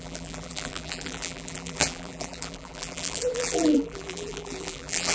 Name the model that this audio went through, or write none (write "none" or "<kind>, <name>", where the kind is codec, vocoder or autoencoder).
vocoder, BigVGAN v2